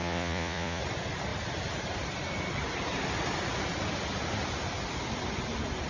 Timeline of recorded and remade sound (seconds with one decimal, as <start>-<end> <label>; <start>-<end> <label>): 0.0-0.8 remade; 0.8-5.9 recorded